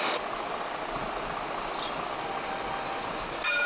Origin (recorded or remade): recorded